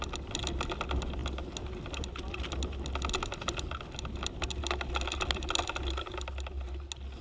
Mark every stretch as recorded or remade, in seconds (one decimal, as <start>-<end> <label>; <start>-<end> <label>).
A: 0.0-7.2 recorded